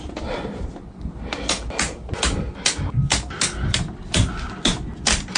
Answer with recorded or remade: recorded